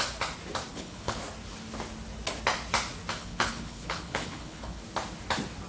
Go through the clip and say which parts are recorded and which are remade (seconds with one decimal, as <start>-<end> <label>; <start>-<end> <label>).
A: 0.0-0.7 recorded; 0.7-1.2 remade; 1.2-3.2 recorded; 3.2-4.8 remade; 4.8-5.7 recorded